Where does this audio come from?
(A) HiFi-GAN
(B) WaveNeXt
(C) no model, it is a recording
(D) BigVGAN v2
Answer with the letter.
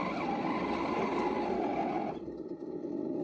C